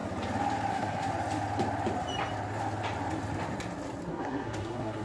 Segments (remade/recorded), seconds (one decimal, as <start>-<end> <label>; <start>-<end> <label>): 0.0-0.7 recorded; 0.7-1.1 remade; 1.1-4.1 recorded; 4.1-5.0 remade